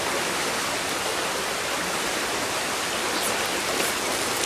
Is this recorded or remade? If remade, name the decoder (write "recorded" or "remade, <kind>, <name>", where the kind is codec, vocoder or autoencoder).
recorded